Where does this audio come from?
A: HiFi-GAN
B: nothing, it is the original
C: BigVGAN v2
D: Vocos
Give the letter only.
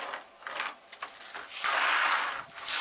B